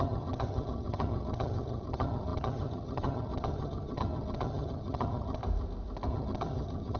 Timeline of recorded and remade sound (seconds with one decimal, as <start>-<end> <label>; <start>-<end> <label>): 0.0-5.4 remade; 5.4-6.1 recorded; 6.1-7.0 remade